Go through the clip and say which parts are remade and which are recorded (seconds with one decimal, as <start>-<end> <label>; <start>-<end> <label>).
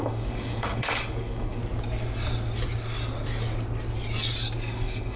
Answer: 0.0-1.6 remade; 1.6-4.6 recorded; 4.6-5.2 remade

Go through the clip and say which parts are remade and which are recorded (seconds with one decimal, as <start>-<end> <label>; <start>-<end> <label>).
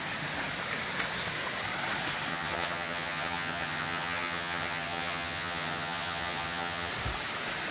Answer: 0.0-2.3 recorded; 2.3-6.9 remade; 6.9-7.7 recorded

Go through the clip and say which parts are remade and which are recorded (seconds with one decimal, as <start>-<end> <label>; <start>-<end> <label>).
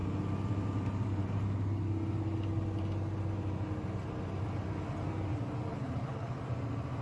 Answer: 0.0-5.7 recorded; 5.7-6.4 remade; 6.4-7.0 recorded